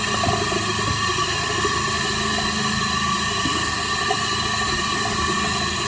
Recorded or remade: recorded